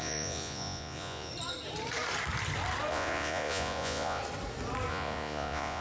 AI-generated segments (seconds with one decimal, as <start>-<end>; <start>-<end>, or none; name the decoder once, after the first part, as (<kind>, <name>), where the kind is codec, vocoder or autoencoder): 0.0-1.3 (vocoder, Vocos); 2.9-4.2; 4.9-5.8